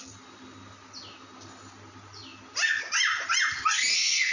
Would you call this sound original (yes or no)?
yes